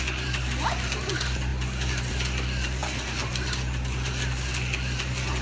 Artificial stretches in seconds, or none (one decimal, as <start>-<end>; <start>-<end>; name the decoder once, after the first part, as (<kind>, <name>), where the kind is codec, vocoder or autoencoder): none